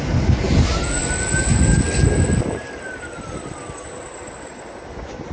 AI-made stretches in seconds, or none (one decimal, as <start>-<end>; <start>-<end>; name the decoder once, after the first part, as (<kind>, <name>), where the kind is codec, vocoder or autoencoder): none